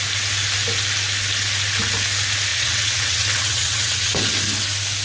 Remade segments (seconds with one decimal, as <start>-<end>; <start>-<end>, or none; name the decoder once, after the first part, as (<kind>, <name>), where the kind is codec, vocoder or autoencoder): 2.5-4.4 (vocoder, WaveNeXt)